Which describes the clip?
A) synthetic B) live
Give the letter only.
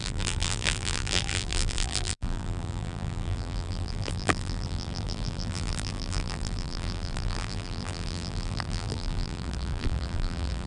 A